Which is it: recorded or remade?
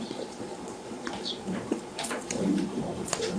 remade